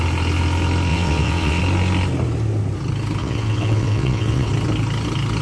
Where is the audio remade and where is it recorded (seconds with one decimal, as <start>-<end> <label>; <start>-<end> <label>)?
0.0-0.9 recorded; 0.9-1.6 remade; 1.6-3.2 recorded; 3.2-4.5 remade; 4.5-5.4 recorded